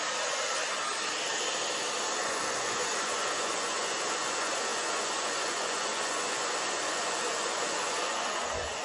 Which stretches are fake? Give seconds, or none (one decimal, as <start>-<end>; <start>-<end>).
2.2-8.8